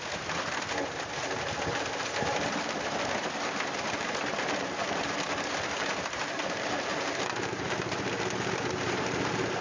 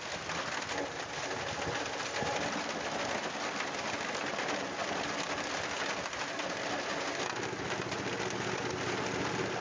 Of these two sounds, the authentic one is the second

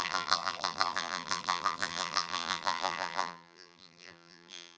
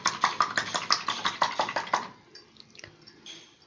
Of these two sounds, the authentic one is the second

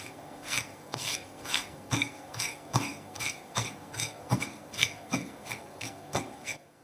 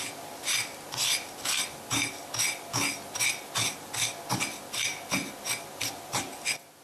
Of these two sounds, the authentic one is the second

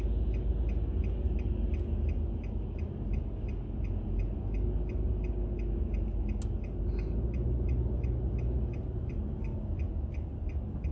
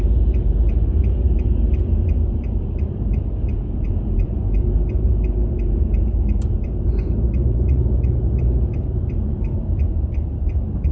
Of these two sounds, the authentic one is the first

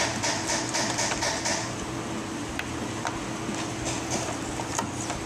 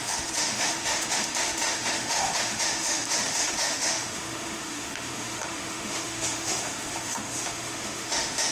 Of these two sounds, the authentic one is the first